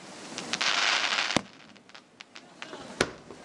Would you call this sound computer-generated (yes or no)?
no